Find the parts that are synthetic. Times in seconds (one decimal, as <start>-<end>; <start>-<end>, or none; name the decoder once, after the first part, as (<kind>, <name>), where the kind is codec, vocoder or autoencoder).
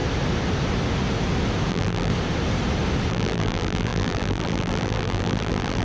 1.7-2.1 (vocoder, BigVGAN v2); 3.1-5.8